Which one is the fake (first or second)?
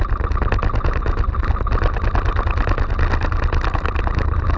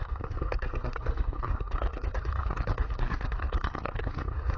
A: second